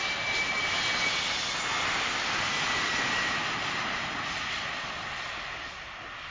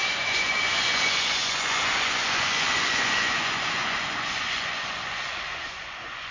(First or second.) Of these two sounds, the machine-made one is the second